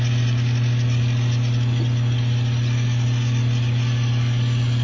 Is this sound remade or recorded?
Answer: recorded